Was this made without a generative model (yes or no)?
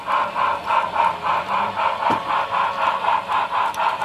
yes